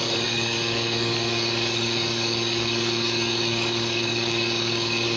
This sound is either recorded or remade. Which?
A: remade